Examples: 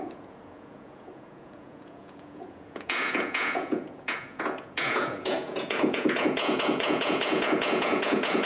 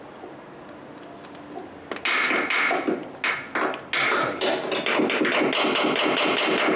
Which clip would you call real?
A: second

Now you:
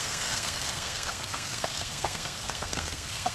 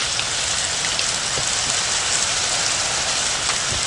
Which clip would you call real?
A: second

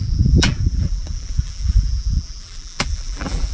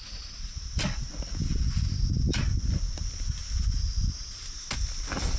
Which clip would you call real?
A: second